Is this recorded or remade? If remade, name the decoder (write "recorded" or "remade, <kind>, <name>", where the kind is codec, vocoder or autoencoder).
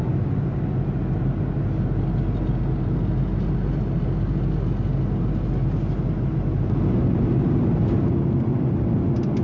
recorded